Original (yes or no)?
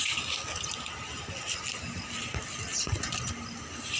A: yes